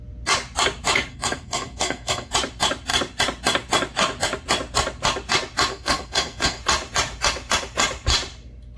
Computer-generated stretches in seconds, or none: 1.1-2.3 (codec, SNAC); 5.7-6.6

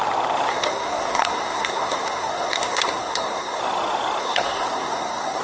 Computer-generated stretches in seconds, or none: 0.5-3.6 (codec, SNAC); 4.2-5.4

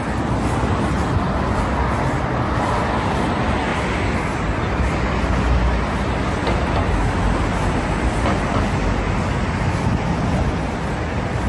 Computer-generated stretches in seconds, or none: none

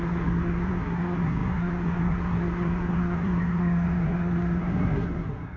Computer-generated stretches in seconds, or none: 0.0-5.6 (codec, SNAC)

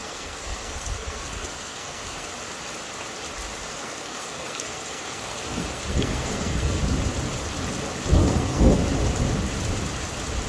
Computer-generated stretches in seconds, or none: 0.0-2.3 (codec, SNAC); 3.7-6.8; 8.2-8.8

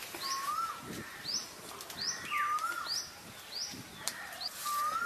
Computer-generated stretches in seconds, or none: none

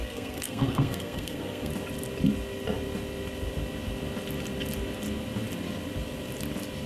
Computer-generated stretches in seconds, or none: 0.0-1.7 (codec, SNAC)